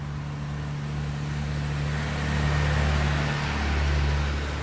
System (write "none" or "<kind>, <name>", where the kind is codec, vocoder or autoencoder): none